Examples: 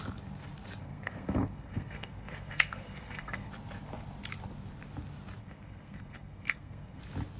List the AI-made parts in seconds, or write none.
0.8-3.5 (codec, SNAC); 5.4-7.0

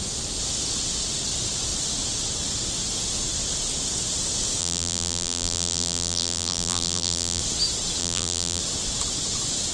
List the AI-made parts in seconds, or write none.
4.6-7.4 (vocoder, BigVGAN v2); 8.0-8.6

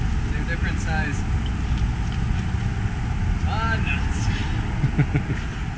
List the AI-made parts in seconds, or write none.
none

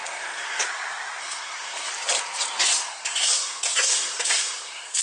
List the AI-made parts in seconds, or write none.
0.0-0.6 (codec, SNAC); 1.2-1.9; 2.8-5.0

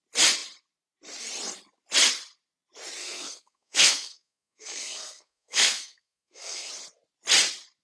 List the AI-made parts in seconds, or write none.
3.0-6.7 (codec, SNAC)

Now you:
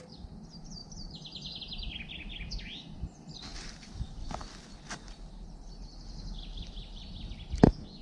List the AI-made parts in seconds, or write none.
none